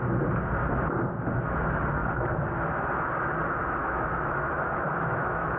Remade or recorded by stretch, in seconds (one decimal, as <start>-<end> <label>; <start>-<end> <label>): 0.0-3.8 recorded; 3.8-5.6 remade